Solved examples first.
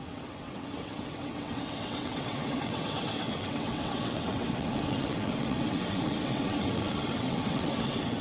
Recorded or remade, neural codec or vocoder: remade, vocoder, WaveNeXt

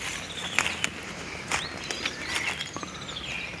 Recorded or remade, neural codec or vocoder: recorded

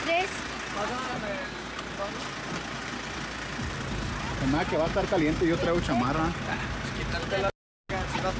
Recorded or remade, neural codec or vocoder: recorded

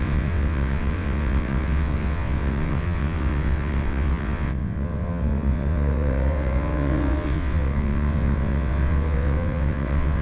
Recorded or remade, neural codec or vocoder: remade, vocoder, WaveNeXt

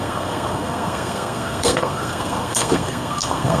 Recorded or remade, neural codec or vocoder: remade, codec, SNAC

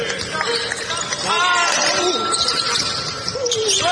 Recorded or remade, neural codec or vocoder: recorded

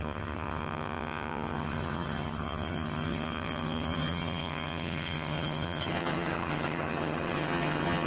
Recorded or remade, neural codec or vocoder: remade, vocoder, HiFi-GAN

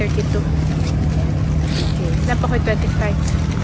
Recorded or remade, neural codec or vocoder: recorded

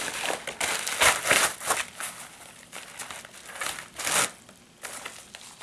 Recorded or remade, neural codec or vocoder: recorded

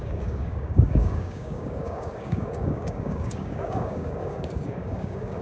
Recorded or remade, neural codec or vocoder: remade, codec, DAC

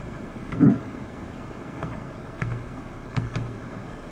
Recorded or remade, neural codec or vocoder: remade, codec, SNAC